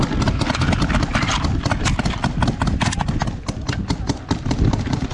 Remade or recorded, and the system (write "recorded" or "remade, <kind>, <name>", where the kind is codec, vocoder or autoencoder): recorded